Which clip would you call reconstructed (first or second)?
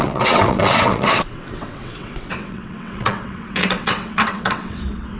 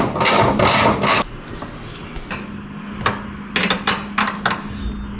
first